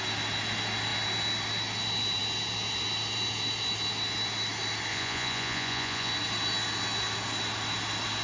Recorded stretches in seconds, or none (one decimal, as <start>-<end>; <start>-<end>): 0.0-4.9; 6.1-8.2